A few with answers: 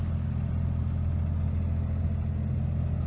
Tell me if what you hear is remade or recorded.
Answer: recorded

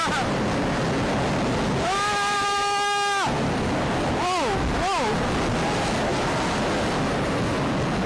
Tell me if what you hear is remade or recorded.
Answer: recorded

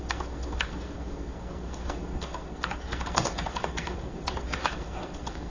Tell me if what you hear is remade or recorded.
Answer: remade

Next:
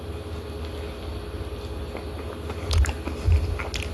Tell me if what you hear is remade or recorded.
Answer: recorded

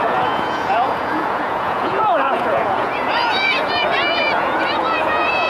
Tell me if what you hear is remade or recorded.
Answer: remade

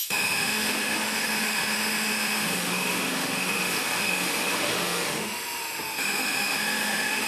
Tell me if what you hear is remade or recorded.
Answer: remade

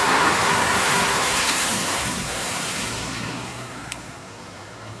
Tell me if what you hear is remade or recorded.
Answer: remade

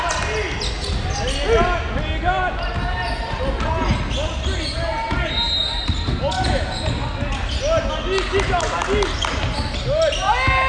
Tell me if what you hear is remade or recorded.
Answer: recorded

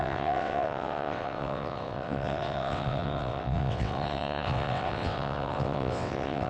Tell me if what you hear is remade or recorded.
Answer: remade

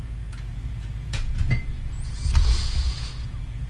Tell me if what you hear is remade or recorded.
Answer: remade